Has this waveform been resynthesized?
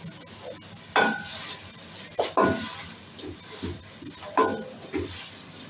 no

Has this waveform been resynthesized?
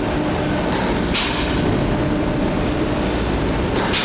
no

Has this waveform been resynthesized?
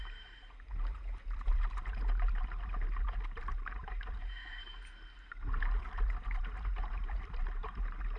yes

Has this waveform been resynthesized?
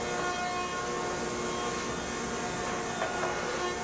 no